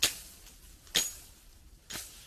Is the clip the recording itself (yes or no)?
yes